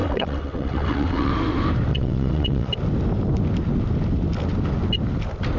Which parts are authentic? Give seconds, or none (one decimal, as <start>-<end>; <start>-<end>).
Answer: 1.3-1.9; 2.7-5.6